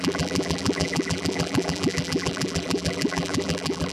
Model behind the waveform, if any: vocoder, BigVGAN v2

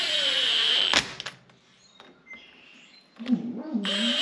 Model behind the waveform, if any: none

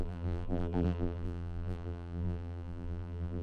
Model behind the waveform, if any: vocoder, BigVGAN v2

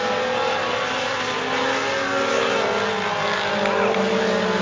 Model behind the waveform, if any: none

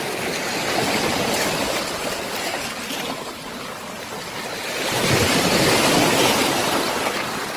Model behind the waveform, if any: none